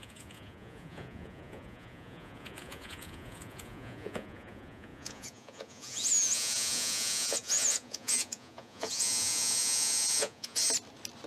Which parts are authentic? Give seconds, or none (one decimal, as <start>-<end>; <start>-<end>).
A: 10.6-11.3